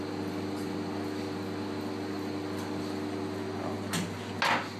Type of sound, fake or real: real